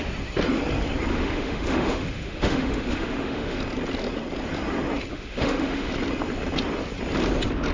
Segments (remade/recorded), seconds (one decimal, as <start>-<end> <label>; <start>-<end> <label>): 0.0-1.1 recorded; 1.1-3.6 remade; 3.6-5.1 recorded; 5.1-5.9 remade; 5.9-7.7 recorded